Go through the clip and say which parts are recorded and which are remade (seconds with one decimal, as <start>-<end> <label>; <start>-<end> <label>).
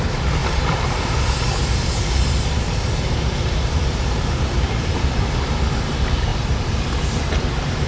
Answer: 0.0-0.4 recorded; 0.4-5.1 remade; 5.1-7.9 recorded